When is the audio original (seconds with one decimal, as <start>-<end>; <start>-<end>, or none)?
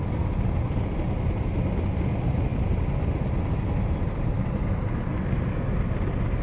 0.0-6.4